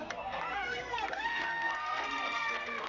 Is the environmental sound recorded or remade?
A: remade